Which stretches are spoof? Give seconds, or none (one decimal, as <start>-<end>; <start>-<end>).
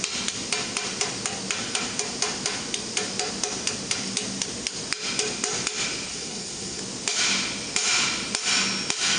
6.1-6.8